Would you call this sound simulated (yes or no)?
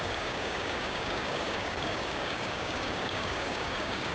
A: yes